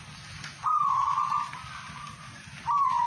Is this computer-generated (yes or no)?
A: no